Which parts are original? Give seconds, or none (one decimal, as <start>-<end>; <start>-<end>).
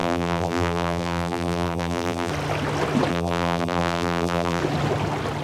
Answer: 2.3-3.1; 4.6-5.4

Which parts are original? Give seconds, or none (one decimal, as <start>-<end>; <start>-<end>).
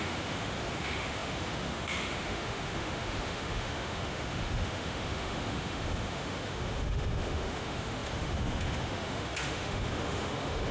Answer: none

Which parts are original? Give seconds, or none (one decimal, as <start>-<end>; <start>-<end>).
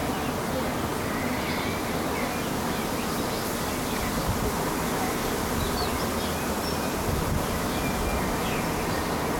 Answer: 0.0-9.4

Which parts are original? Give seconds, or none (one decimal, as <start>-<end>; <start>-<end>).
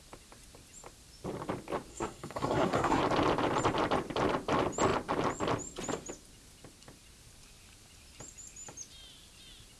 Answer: 0.0-1.9; 3.0-9.8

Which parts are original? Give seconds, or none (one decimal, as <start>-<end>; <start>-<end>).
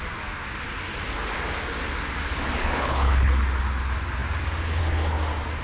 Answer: 0.0-2.6; 3.3-5.6